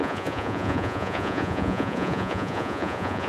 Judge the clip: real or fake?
fake